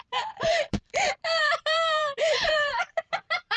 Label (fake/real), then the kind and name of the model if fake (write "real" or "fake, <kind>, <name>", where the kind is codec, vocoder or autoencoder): fake, vocoder, BigVGAN v2